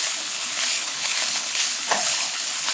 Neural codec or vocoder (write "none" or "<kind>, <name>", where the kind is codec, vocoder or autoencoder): codec, HILCodec